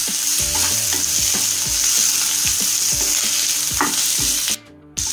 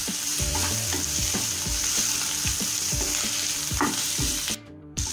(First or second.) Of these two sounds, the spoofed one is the second